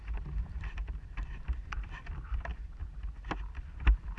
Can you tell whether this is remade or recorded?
remade